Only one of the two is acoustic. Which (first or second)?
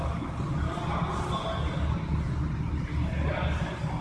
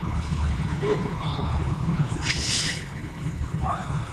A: first